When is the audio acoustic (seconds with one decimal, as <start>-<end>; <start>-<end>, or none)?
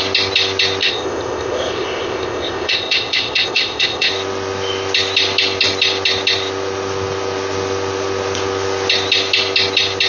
0.0-0.8; 4.1-10.1